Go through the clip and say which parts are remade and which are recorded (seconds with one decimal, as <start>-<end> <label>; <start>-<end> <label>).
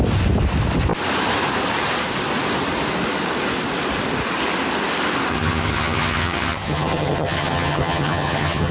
0.0-5.3 recorded; 5.3-8.7 remade